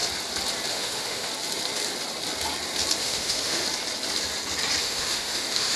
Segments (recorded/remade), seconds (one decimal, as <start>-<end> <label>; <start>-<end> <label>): 0.0-0.7 recorded; 0.7-1.3 remade; 1.3-3.0 recorded; 3.0-3.6 remade; 3.6-4.8 recorded; 4.8-5.8 remade